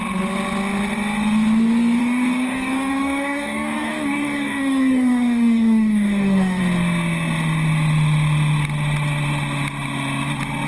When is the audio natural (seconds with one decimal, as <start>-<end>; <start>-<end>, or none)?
0.0-2.0; 6.6-10.7